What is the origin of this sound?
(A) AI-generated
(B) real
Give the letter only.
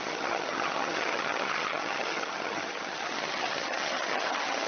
A